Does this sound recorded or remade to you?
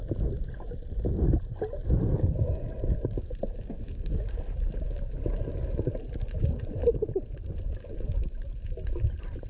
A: recorded